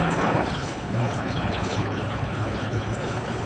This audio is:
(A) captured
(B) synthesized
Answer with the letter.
B